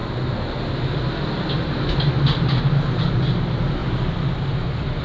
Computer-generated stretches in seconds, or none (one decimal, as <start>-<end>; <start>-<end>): none